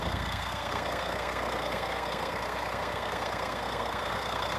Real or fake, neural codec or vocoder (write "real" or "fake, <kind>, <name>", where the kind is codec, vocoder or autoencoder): fake, codec, SNAC